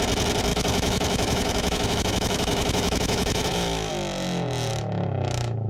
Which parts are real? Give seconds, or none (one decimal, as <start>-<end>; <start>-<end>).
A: 0.0-0.5; 3.9-4.7